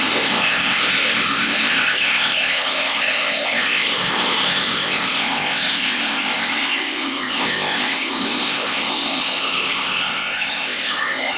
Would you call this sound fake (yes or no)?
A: yes